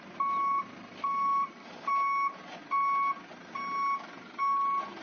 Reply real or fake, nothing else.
real